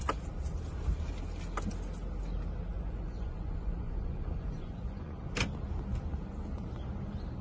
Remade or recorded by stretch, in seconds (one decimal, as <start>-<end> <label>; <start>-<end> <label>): 0.0-2.7 recorded; 2.7-5.3 remade; 5.3-7.4 recorded